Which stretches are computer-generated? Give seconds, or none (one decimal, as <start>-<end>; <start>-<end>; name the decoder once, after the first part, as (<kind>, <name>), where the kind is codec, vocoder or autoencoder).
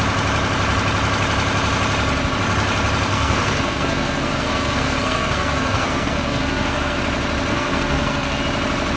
3.1-7.0 (codec, SNAC); 7.5-8.4